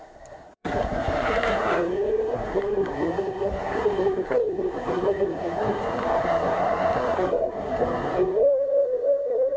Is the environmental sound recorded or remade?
remade